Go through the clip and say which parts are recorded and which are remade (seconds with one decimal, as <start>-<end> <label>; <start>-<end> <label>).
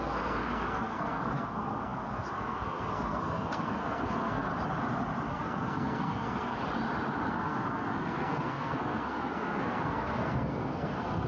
0.0-4.5 remade; 4.5-5.3 recorded; 5.3-6.6 remade; 6.6-7.3 recorded; 7.3-11.3 remade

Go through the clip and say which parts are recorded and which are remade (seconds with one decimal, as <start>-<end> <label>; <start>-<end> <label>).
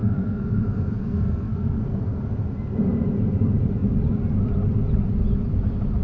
0.0-2.2 remade; 2.2-6.0 recorded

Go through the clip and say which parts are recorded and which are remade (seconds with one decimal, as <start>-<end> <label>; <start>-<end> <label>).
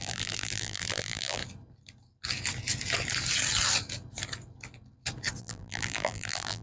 0.0-1.4 remade; 1.4-5.4 recorded; 5.4-6.6 remade